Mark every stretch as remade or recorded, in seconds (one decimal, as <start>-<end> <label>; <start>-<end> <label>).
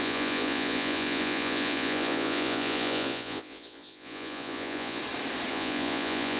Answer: 0.0-5.0 remade; 5.0-5.5 recorded; 5.5-6.4 remade